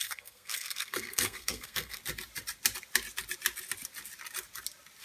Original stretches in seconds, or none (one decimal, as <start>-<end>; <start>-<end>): 2.0-5.0